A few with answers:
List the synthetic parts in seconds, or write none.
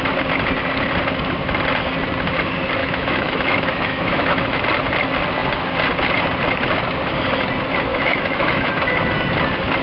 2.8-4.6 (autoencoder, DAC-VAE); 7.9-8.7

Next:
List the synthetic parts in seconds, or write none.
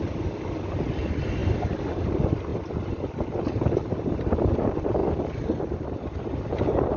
none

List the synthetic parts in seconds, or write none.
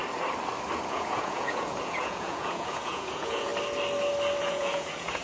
0.9-3.5 (vocoder, Vocos); 4.4-5.2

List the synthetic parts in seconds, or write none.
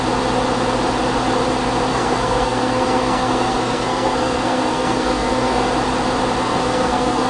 1.9-5.7 (codec, SNAC); 6.4-7.3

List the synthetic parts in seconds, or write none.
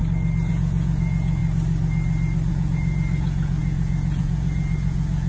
0.5-1.4 (vocoder, Vocos); 2.5-5.3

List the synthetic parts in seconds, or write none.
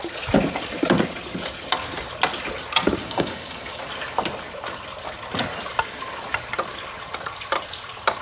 3.0-3.8 (codec, DAC)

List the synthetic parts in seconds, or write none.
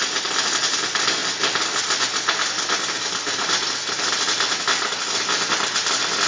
none